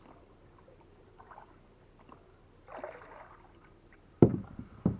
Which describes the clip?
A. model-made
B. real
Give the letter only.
B